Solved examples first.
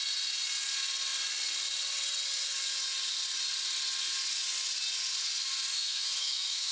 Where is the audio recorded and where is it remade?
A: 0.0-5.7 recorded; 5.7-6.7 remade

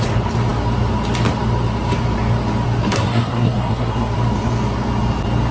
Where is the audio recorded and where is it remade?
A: 0.0-2.8 recorded; 2.8-4.1 remade; 4.1-5.5 recorded